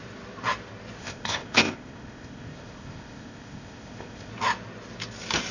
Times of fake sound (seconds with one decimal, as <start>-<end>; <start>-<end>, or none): 1.0-4.3

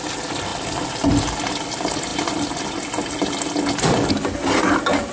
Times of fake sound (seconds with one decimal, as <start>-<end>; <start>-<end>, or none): none

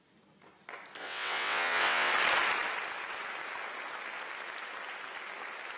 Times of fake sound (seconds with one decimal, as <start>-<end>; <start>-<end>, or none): 1.0-2.1

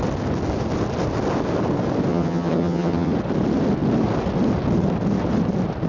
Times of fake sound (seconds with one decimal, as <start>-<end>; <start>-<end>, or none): 2.1-3.1

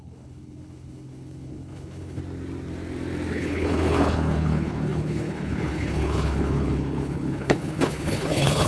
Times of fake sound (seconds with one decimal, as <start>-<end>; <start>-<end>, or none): 0.0-2.2; 3.3-8.7

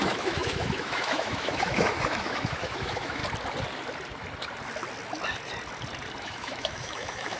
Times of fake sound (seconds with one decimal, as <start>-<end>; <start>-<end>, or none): 0.0-3.2; 6.2-7.4

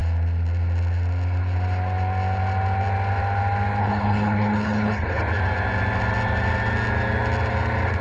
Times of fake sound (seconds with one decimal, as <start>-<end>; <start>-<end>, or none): 3.8-5.2

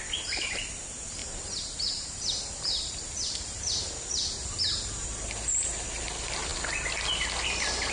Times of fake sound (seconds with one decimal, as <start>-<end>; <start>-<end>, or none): 1.2-3.6; 4.4-5.6